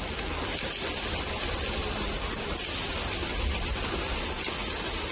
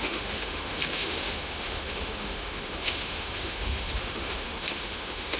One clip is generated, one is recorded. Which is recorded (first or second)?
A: first